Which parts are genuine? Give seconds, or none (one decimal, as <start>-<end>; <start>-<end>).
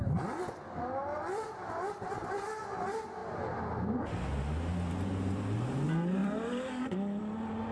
0.0-6.2; 7.2-7.7